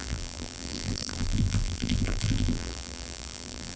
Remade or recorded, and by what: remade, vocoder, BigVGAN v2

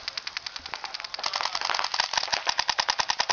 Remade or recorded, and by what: recorded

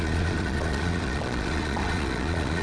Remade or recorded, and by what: remade, vocoder, Vocos